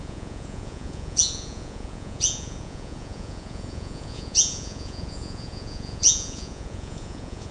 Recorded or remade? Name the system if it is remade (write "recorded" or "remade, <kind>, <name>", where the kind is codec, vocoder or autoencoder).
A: remade, vocoder, Vocos